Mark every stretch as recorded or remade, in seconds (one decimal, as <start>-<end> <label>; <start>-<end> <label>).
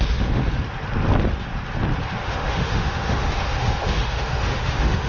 0.0-0.4 remade; 0.4-2.2 recorded; 2.2-5.1 remade